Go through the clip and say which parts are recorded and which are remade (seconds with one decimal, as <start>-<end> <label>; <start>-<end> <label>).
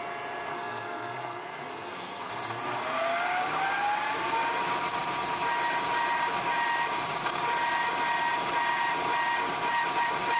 0.0-0.5 recorded; 0.5-2.3 remade; 2.3-10.4 recorded